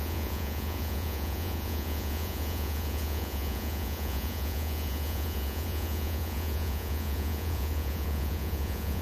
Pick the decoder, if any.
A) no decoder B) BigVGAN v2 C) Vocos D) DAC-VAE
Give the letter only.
C